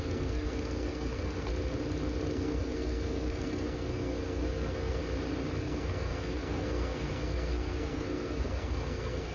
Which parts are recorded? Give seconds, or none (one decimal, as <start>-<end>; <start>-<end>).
1.5-2.3; 5.0-5.6